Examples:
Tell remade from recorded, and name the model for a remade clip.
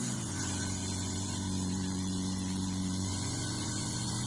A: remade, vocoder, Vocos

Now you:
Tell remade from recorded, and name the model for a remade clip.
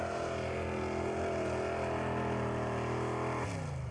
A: recorded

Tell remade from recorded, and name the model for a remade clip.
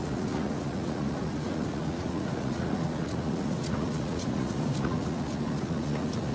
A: remade, vocoder, Vocos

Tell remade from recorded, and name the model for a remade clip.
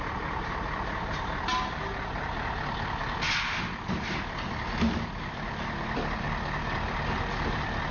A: recorded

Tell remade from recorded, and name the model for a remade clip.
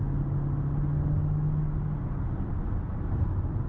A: recorded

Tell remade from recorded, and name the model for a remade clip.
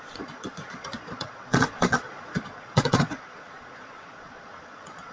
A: remade, vocoder, Vocos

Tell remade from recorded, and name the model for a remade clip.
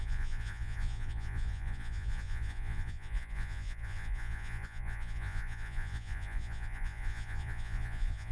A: remade, vocoder, Vocos